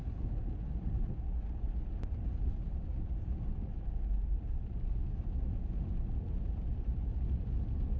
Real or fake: fake